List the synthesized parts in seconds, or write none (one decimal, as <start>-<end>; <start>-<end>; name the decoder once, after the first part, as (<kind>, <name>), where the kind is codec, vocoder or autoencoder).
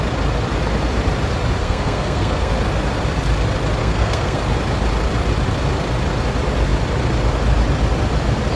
1.6-2.5 (codec, SNAC); 3.8-4.4